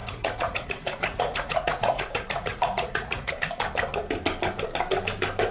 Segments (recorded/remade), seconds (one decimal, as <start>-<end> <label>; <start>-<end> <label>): 0.0-3.3 remade; 3.3-5.5 recorded